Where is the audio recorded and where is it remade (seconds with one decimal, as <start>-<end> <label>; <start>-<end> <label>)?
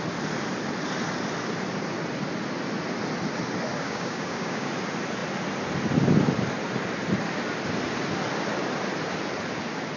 0.0-3.7 recorded; 3.7-4.7 remade; 4.7-10.0 recorded